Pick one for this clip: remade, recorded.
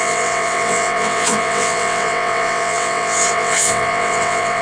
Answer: remade